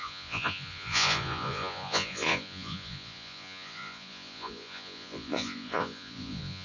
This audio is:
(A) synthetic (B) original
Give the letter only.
A